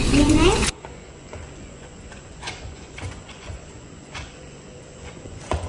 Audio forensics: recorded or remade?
remade